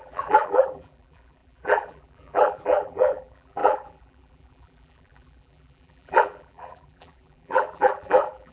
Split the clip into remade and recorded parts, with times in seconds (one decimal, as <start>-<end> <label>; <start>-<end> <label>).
0.0-8.5 remade